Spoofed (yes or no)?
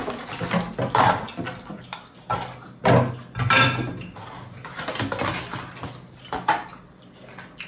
no